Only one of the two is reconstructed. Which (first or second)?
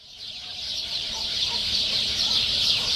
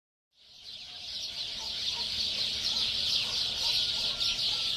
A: first